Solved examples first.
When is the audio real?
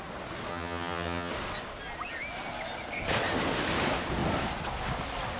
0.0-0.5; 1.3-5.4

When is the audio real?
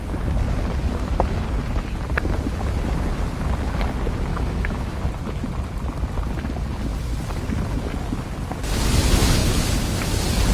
0.0-4.3; 5.0-10.5